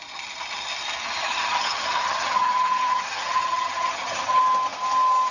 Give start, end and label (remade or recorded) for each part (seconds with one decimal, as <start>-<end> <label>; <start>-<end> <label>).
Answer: 0.0-1.2 recorded; 1.2-4.4 remade; 4.4-5.3 recorded